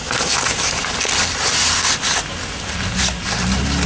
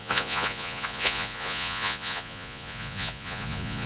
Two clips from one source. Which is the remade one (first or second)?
second